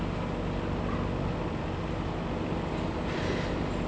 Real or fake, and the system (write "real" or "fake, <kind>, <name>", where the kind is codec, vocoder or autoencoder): real